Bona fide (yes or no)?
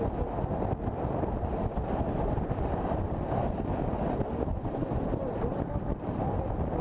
yes